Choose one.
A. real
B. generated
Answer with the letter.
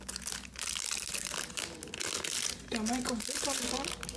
A